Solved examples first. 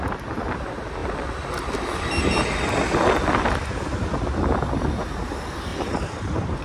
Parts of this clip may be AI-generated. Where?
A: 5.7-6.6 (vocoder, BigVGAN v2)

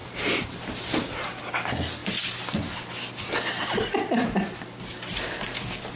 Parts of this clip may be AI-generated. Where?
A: 0.0-1.5 (vocoder, BigVGAN v2)

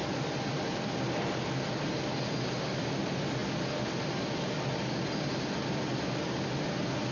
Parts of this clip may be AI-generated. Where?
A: 0.0-0.6 (vocoder, BigVGAN v2); 3.4-4.7

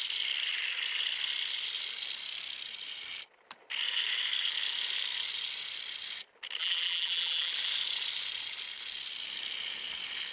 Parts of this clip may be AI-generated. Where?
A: 6.6-7.5 (vocoder, BigVGAN v2)

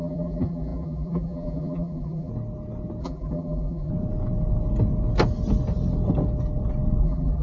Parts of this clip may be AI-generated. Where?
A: 0.0-2.3 (vocoder, BigVGAN v2); 3.0-3.9; 7.0-7.4

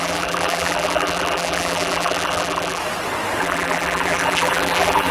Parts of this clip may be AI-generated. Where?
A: 0.0-2.8 (vocoder, BigVGAN v2); 3.4-5.1